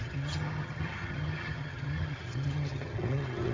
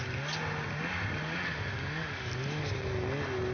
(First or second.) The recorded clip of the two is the second